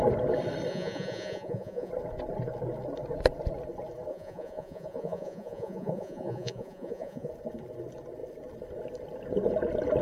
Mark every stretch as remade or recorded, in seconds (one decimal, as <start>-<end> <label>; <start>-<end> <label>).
0.0-0.7 recorded; 0.7-1.9 remade; 1.9-4.1 recorded; 4.1-7.3 remade; 7.3-10.0 recorded